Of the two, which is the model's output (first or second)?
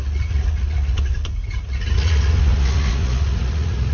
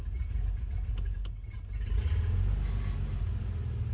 first